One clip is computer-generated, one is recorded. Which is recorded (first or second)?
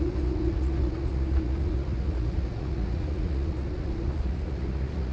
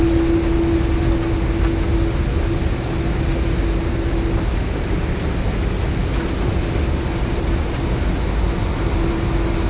second